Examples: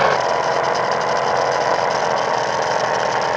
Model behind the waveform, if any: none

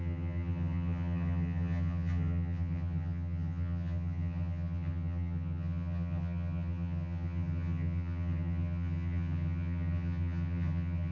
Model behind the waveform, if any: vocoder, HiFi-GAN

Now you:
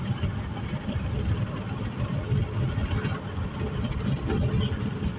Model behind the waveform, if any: none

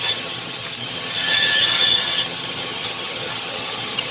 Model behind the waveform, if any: vocoder, HiFi-GAN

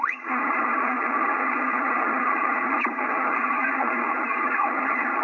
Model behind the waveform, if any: vocoder, HiFi-GAN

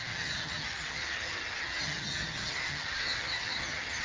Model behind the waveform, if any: vocoder, HiFi-GAN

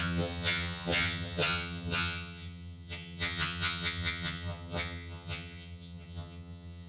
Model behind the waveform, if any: vocoder, HiFi-GAN